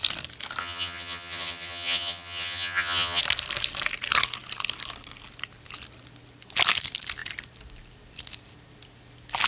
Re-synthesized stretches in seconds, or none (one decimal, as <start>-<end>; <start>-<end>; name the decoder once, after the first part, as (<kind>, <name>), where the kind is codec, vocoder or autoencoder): 0.6-3.2 (vocoder, HiFi-GAN)